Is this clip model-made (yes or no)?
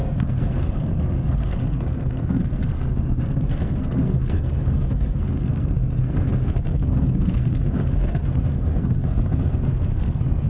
yes